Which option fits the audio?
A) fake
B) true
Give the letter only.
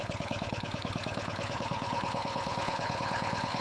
A